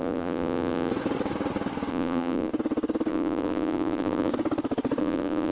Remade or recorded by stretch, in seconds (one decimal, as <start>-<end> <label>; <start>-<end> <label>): 0.0-0.9 remade; 0.9-1.9 recorded; 1.9-2.5 remade; 2.5-3.1 recorded; 3.1-4.3 remade; 4.3-5.0 recorded; 5.0-5.5 remade